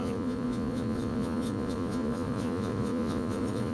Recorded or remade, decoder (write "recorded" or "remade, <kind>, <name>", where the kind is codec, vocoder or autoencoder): remade, vocoder, Vocos